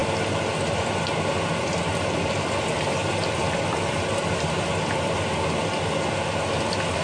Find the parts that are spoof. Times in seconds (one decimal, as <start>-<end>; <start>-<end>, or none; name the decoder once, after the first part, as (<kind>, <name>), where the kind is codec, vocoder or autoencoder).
none